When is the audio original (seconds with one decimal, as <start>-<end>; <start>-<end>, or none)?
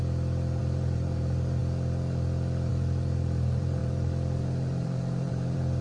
0.0-0.6; 1.6-2.7